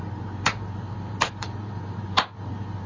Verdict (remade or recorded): remade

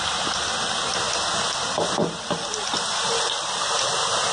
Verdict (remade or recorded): recorded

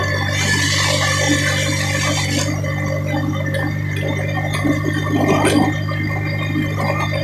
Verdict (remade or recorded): recorded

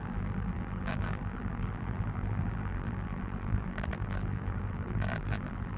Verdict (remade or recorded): remade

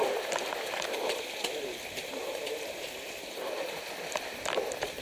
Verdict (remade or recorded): remade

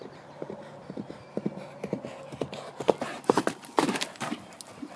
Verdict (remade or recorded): recorded